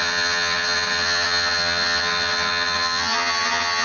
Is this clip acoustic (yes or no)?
no